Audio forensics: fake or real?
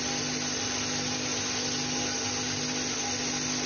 real